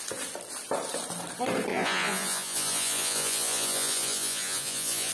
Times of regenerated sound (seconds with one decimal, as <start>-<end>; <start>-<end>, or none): 1.7-5.1